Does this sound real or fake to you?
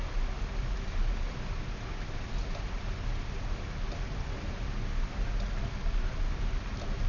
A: real